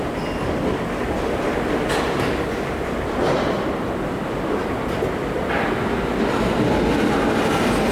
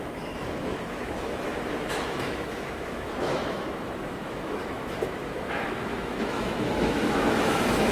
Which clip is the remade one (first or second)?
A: second